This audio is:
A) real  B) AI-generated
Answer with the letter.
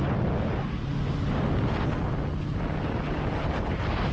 A